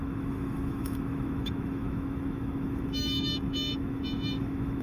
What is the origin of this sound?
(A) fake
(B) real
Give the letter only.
A